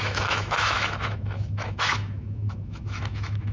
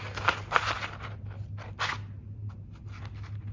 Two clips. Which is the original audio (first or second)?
second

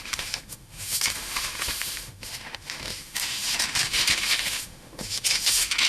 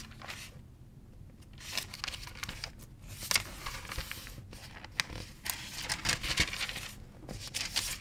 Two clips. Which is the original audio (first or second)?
second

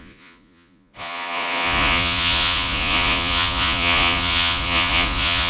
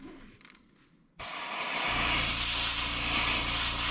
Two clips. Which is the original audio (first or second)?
second